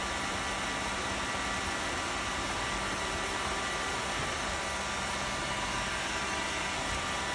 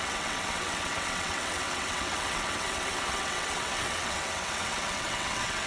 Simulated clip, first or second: second